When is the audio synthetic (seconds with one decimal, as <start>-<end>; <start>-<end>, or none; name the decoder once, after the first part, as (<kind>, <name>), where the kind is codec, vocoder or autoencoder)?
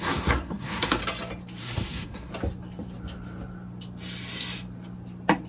0.0-1.0 (codec, SNAC); 1.6-2.3